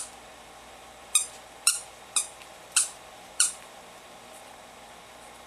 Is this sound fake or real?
fake